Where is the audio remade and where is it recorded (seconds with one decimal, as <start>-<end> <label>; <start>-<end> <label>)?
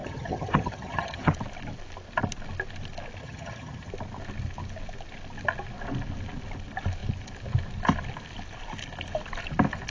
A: 0.0-1.3 remade; 1.3-3.2 recorded; 3.2-3.9 remade; 3.9-9.9 recorded